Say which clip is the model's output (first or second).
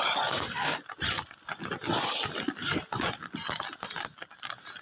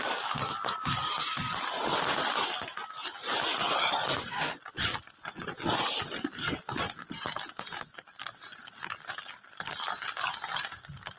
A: first